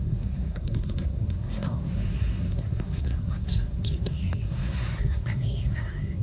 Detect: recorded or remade remade